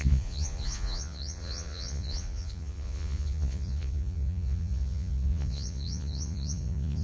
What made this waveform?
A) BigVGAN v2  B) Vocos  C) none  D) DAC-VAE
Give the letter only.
B